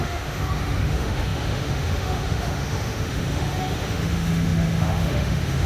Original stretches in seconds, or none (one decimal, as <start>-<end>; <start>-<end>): none